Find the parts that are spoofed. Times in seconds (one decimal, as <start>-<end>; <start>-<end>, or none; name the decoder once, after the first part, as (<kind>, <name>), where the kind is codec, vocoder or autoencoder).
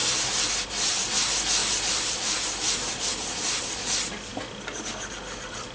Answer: 1.6-3.6 (vocoder, BigVGAN v2)